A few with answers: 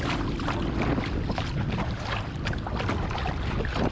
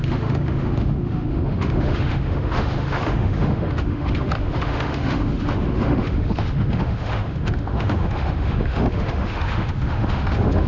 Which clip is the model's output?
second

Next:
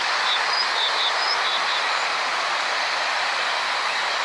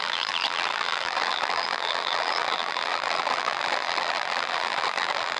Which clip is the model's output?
second